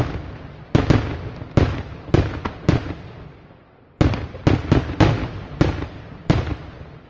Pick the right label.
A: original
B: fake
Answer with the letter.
A